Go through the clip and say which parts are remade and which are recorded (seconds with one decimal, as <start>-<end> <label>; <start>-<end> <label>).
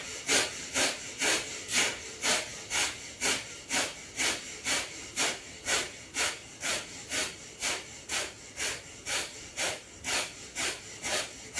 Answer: 0.0-11.6 recorded